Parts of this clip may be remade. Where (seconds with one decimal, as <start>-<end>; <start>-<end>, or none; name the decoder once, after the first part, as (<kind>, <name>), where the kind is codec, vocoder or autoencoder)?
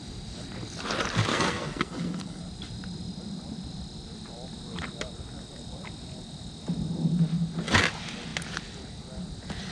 1.3-2.4 (codec, SNAC)